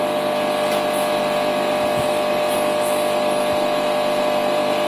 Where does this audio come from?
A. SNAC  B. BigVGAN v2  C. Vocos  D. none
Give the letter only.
D